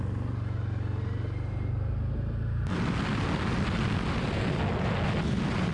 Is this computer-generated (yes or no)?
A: no